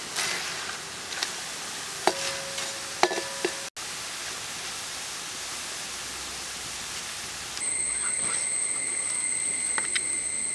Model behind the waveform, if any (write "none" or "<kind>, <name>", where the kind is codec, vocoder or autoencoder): none